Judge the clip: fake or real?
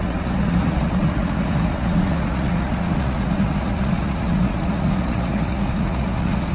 fake